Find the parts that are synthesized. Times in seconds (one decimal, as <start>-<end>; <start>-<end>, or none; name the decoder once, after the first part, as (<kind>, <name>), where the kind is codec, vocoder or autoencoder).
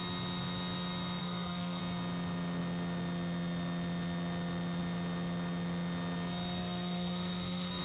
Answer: 1.2-1.8 (codec, SNAC); 6.6-7.8